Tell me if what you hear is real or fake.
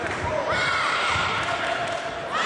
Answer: fake